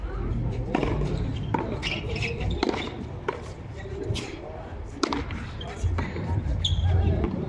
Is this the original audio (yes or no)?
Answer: no